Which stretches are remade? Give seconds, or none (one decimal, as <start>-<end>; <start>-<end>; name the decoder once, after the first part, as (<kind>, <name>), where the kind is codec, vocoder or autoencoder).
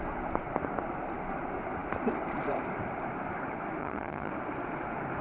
3.8-4.3 (vocoder, HiFi-GAN)